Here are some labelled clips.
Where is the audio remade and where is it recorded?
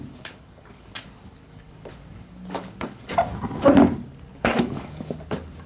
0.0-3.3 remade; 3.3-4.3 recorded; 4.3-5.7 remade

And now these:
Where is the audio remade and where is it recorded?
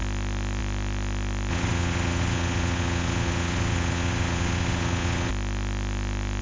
0.0-1.5 recorded; 1.5-5.3 remade; 5.3-6.4 recorded